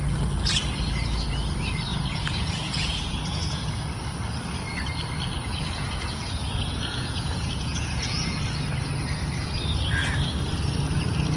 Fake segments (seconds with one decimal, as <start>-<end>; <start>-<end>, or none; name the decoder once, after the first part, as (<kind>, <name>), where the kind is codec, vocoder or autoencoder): 1.9-3.6 (vocoder, Vocos); 5.5-8.4